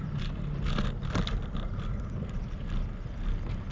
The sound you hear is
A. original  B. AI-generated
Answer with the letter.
A